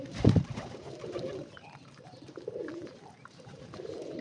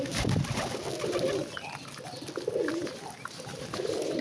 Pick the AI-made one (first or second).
first